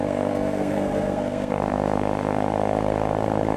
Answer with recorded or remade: remade